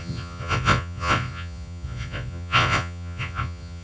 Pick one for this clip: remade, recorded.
remade